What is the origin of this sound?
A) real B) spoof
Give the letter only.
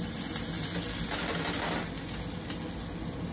A